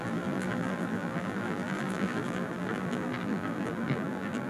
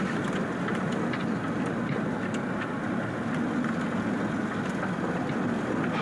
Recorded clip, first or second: second